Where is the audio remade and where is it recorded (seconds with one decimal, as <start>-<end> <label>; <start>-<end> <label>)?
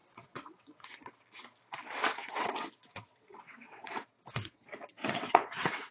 0.0-1.1 remade; 1.1-2.2 recorded; 2.2-5.9 remade